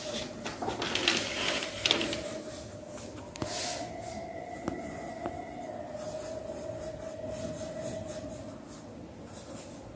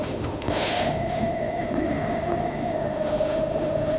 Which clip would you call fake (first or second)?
second